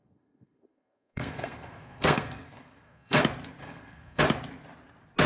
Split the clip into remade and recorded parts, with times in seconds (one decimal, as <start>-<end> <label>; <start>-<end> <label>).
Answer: 0.0-3.2 remade; 3.2-3.6 recorded; 3.6-4.2 remade; 4.2-5.3 recorded